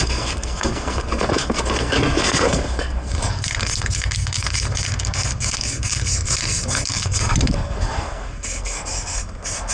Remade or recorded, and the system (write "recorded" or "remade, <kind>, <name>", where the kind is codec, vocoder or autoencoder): remade, codec, SNAC